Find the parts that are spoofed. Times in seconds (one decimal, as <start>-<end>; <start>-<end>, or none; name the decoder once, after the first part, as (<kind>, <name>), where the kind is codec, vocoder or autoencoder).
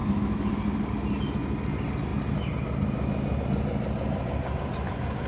0.0-0.5 (autoencoder, DAC-VAE)